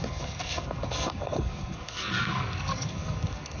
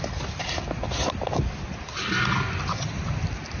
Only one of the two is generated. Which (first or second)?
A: first